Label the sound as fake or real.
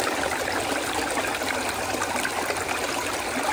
real